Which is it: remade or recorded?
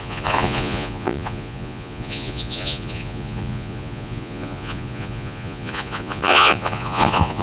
remade